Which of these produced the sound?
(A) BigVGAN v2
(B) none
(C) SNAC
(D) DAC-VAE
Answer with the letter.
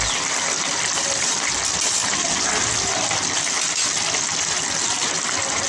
B